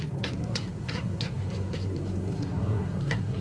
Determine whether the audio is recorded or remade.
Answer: remade